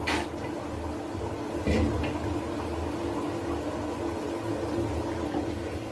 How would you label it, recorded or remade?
recorded